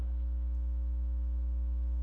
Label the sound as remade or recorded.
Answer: recorded